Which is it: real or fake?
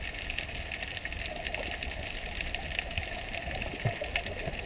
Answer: real